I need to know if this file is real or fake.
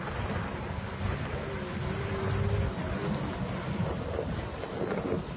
real